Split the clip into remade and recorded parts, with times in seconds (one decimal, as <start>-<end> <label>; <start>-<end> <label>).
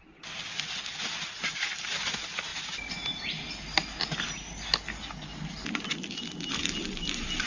0.0-7.5 recorded